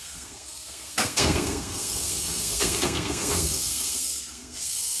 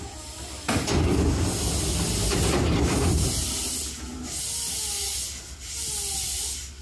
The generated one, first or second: first